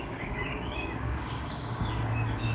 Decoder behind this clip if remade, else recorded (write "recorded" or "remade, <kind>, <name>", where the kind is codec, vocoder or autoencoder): remade, codec, DAC